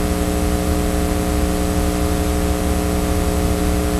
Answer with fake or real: real